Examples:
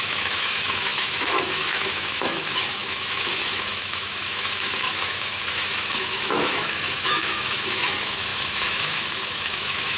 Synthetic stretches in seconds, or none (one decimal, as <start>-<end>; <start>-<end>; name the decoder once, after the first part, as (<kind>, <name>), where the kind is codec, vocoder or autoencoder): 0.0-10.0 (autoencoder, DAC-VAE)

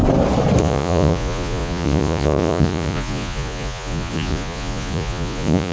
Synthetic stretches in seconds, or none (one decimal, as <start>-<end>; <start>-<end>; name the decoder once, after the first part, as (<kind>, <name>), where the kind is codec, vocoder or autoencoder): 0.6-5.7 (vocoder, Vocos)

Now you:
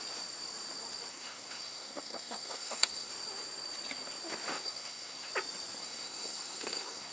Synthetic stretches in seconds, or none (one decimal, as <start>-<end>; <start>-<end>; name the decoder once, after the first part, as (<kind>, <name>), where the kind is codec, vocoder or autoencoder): 1.1-3.1 (codec, SNAC); 4.5-5.3; 5.8-7.1

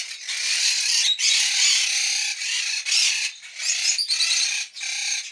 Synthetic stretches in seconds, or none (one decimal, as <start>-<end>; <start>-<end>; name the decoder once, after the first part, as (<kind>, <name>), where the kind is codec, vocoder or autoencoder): none

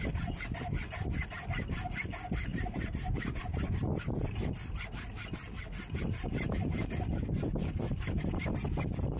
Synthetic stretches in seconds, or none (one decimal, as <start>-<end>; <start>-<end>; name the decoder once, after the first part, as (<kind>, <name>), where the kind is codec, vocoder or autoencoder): 2.5-3.4 (vocoder, BigVGAN v2)

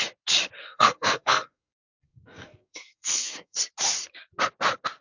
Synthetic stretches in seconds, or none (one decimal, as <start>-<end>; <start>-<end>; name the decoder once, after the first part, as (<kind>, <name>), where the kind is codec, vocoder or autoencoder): 0.6-3.6 (codec, SNAC)